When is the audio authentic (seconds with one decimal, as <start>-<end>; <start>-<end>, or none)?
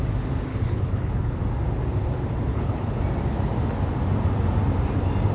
0.0-0.5; 1.4-2.5; 3.0-5.3